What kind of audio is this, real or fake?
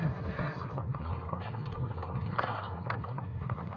fake